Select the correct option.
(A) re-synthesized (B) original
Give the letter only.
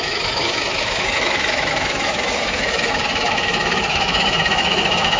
A